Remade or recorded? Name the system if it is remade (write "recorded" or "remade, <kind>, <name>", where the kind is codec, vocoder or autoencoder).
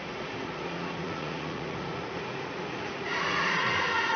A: remade, vocoder, Vocos